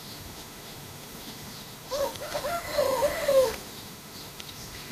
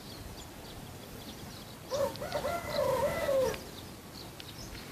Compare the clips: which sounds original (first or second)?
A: second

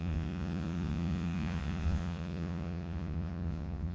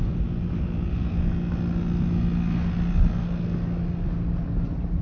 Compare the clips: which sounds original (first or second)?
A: second